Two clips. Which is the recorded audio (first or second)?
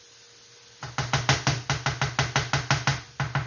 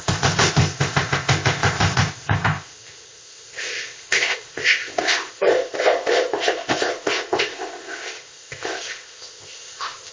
first